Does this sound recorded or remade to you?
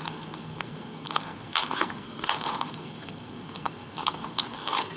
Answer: remade